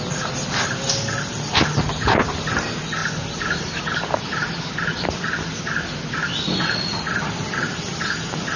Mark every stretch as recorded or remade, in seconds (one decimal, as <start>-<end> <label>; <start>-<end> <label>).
0.0-8.6 recorded

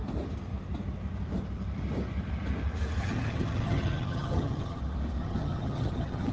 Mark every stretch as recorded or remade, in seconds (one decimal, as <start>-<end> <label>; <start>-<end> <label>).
0.0-3.0 recorded; 3.0-4.8 remade; 4.8-5.2 recorded; 5.2-6.3 remade

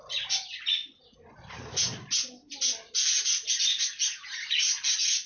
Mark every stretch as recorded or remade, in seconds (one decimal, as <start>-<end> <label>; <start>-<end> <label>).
0.0-5.3 recorded